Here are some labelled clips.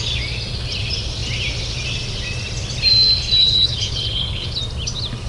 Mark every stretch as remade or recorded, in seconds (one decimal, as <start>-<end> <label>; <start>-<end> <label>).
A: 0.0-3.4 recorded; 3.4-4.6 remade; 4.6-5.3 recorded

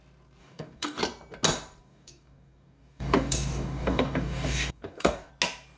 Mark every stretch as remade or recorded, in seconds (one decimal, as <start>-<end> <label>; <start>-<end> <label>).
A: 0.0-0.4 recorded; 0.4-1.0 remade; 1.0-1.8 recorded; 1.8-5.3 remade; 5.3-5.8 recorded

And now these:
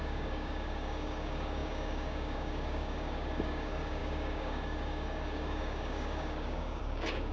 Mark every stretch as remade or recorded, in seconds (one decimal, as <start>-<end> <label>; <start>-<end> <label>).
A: 0.0-7.3 remade